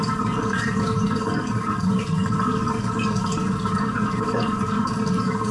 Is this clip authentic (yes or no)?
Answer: no